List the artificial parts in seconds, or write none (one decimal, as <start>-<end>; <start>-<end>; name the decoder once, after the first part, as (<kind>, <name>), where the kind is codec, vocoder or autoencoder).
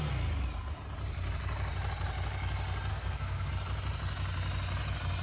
2.9-3.5 (codec, SNAC)